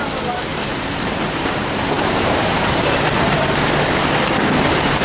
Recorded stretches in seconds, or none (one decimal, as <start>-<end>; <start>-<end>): 0.0-0.5; 3.5-5.0